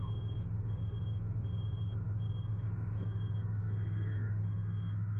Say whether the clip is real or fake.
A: fake